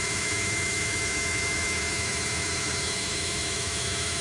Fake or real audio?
fake